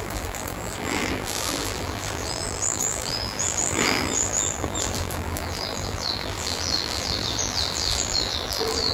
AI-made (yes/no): yes